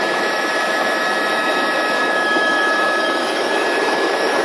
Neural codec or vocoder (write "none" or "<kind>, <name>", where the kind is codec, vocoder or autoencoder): autoencoder, DAC-VAE